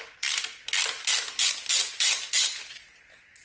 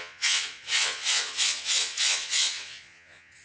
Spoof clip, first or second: second